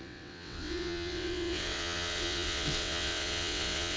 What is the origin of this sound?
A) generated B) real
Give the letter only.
A